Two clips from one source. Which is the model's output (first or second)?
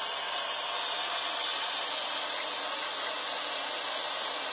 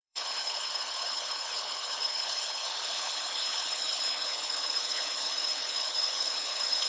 second